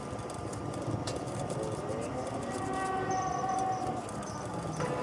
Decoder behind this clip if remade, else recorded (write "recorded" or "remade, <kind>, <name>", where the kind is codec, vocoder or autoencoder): recorded